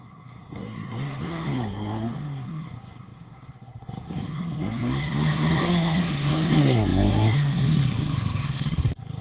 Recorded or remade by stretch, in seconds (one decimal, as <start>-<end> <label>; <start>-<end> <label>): 0.0-9.2 remade